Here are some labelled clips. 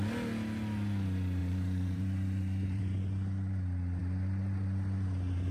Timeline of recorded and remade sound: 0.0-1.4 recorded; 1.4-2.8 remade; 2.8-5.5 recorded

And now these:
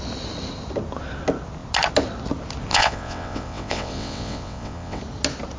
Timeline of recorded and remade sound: 0.0-2.7 recorded; 2.7-5.0 remade; 5.0-5.6 recorded